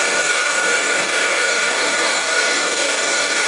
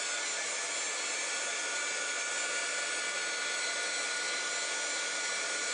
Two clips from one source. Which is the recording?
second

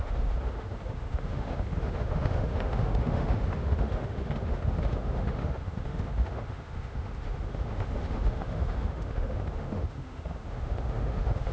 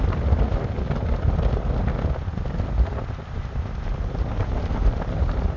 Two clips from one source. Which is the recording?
second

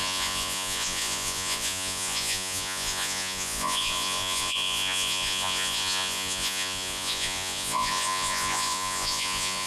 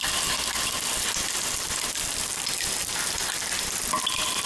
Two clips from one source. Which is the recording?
second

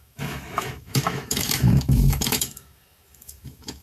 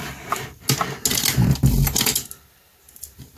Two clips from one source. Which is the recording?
second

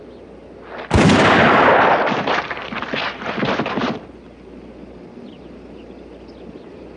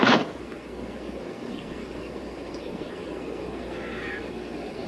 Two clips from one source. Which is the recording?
first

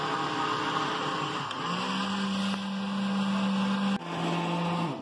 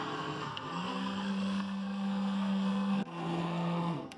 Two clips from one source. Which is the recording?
first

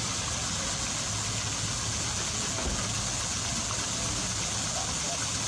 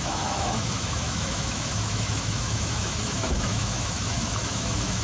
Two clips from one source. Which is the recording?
first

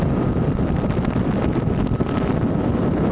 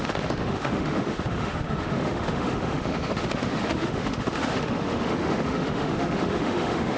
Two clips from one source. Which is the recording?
first